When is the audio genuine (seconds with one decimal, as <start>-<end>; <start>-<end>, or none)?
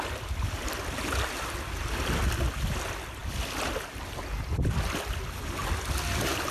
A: 0.0-6.5